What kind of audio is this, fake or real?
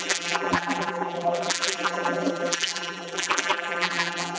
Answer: fake